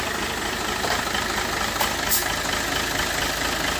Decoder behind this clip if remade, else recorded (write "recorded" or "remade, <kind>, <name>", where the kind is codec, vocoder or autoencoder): recorded